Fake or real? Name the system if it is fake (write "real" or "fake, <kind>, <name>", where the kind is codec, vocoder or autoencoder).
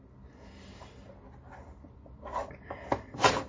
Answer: real